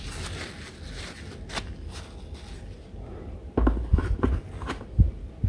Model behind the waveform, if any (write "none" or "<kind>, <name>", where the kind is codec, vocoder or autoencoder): none